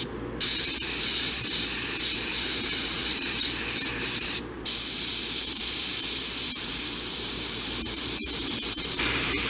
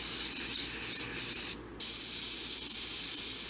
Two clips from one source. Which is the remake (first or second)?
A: first